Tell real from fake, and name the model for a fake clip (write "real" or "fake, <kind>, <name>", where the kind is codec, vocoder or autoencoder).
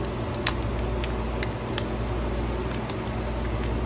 real